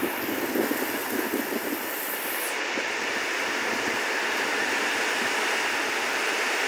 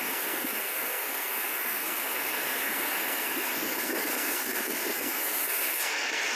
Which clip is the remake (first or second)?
second